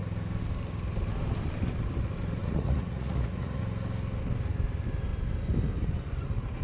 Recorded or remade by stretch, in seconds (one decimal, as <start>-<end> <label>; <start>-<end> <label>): 0.0-2.4 recorded; 2.4-3.6 remade; 3.6-6.6 recorded